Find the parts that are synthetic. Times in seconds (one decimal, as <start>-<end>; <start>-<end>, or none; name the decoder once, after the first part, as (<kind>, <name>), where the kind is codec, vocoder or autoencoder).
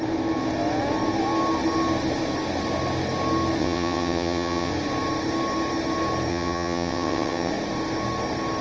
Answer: 3.6-4.7 (vocoder, WaveNeXt); 6.3-7.5